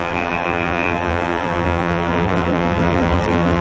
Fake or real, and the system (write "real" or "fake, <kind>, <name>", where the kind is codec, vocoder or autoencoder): fake, vocoder, BigVGAN v2